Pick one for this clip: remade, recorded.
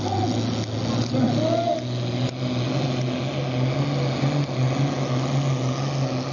recorded